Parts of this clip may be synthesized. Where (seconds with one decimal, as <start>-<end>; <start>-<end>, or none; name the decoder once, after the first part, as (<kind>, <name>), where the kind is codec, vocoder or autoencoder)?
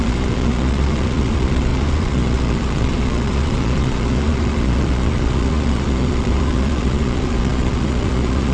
0.0-8.5 (vocoder, Vocos)